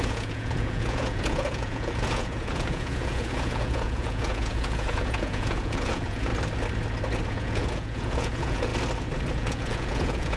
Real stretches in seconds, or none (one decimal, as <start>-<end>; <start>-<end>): 6.3-7.3; 8.7-9.3